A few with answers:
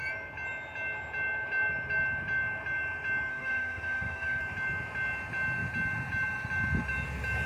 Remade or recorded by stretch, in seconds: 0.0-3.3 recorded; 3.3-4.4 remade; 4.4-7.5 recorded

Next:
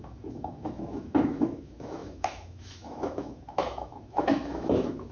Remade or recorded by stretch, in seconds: 0.0-5.1 remade

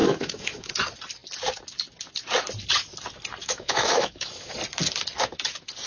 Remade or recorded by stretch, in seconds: 0.0-0.7 remade; 0.7-3.4 recorded; 3.4-4.5 remade; 4.5-5.9 recorded

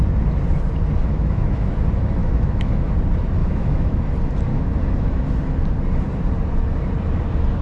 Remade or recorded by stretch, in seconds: 0.0-1.0 recorded; 1.0-1.7 remade; 1.7-2.2 recorded; 2.2-2.9 remade; 2.9-3.4 recorded; 3.4-4.0 remade; 4.0-4.5 recorded; 4.5-5.2 remade; 5.2-7.6 recorded

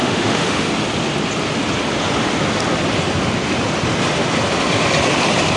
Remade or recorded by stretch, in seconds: 0.0-0.7 remade; 0.7-5.6 recorded

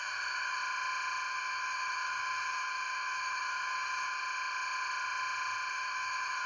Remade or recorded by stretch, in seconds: 0.0-0.6 remade; 0.6-1.3 recorded; 1.3-4.2 remade; 4.2-5.7 recorded; 5.7-6.5 remade